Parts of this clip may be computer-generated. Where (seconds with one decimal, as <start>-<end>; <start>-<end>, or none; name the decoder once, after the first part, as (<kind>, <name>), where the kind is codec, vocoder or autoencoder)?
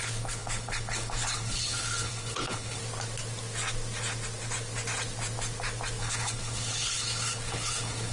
0.0-2.8 (codec, HILCodec); 6.0-8.1